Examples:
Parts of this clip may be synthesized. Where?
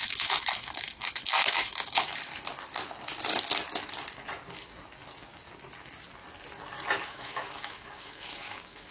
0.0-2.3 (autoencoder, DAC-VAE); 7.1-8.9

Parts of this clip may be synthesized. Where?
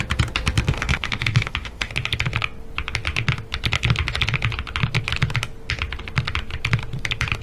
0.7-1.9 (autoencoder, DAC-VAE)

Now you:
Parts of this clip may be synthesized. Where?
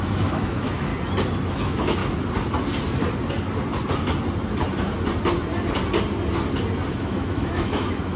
0.0-0.9 (autoencoder, DAC-VAE); 1.5-2.0; 6.9-8.2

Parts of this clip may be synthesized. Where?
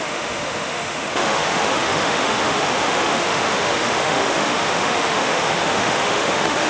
0.0-6.7 (autoencoder, DAC-VAE)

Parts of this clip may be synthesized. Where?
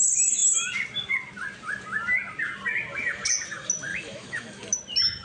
3.9-4.8 (autoencoder, DAC-VAE)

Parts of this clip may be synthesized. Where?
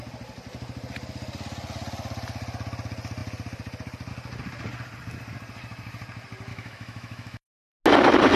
6.5-7.6 (autoencoder, DAC-VAE)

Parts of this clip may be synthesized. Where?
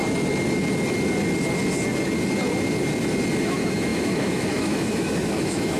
3.4-5.8 (autoencoder, DAC-VAE)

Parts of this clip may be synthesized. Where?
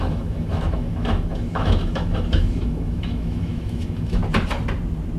0.0-4.2 (autoencoder, DAC-VAE)